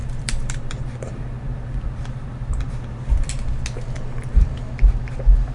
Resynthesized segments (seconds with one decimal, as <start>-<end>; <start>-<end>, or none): 0.0-3.3